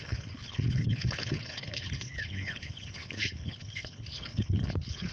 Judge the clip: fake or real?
fake